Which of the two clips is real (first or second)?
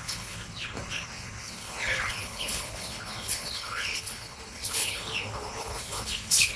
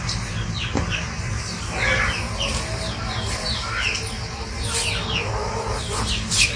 second